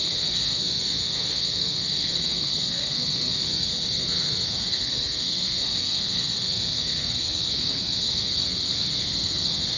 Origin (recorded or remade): remade